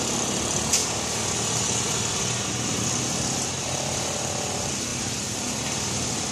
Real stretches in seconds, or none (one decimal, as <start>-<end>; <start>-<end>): 0.8-2.8